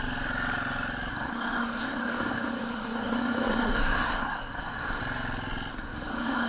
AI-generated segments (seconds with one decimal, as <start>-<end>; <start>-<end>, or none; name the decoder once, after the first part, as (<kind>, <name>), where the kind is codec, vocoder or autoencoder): 1.1-5.0 (codec, SNAC); 5.7-6.5